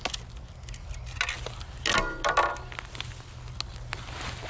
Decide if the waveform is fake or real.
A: real